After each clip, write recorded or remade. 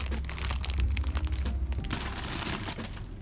recorded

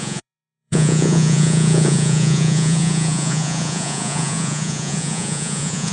remade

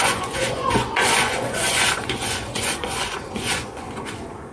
remade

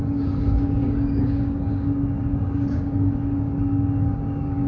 remade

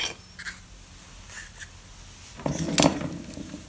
recorded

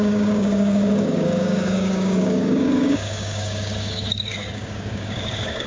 remade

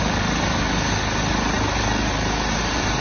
recorded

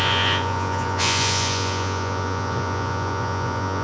remade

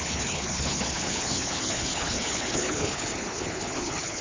remade